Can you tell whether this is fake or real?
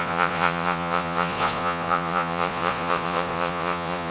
fake